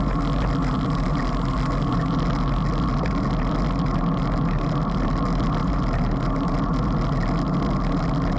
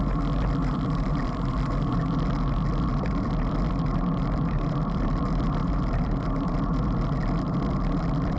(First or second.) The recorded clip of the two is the first